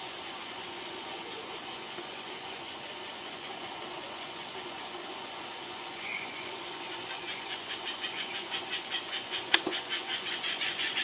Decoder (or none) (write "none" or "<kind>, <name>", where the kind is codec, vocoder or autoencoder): vocoder, Vocos